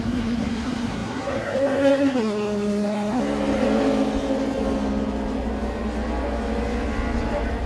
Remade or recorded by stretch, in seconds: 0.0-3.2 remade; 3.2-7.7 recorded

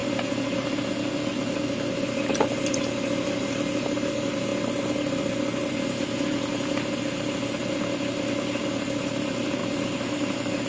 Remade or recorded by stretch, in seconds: 0.0-10.7 recorded

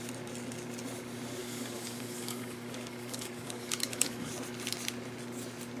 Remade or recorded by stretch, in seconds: 0.0-1.4 recorded; 1.4-4.3 remade; 4.3-5.8 recorded

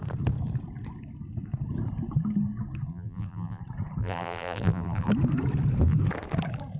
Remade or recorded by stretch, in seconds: 0.0-2.9 recorded; 2.9-3.6 remade; 3.6-4.0 recorded; 4.0-5.1 remade; 5.1-6.8 recorded

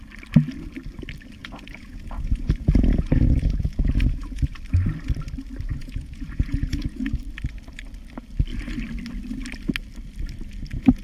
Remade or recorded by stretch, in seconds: 0.0-1.4 recorded; 1.4-4.6 remade; 4.6-5.7 recorded; 5.7-7.2 remade; 7.2-11.0 recorded